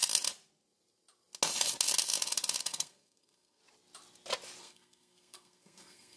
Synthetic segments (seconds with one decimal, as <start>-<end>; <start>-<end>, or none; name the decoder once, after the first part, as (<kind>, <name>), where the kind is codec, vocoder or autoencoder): 2.6-3.6 (codec, SNAC); 4.6-6.2